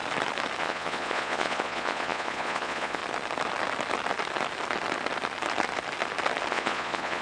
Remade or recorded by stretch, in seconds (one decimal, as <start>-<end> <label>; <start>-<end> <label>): 0.0-0.6 recorded; 0.6-3.0 remade; 3.0-6.5 recorded; 6.5-7.2 remade